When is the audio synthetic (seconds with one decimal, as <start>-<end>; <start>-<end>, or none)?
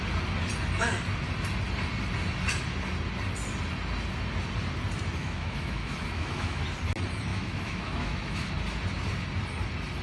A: 5.2-6.6; 7.3-8.5